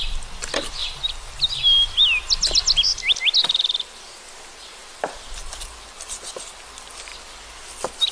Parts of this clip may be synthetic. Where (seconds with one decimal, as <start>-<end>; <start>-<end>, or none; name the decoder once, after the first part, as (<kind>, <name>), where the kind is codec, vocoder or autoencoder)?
4.8-6.6 (vocoder, BigVGAN v2)